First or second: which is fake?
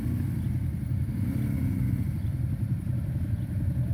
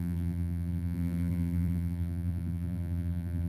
second